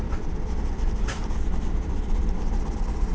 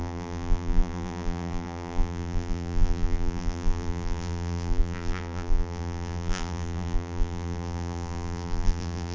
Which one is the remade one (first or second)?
second